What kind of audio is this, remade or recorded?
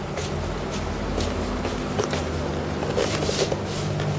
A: recorded